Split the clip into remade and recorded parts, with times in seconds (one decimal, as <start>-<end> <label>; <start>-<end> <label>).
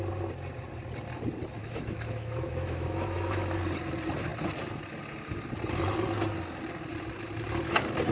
0.0-1.6 recorded; 1.6-3.6 remade; 3.6-8.1 recorded